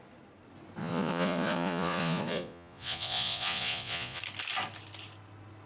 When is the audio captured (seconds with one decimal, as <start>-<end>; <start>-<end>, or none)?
0.0-0.8; 4.2-5.7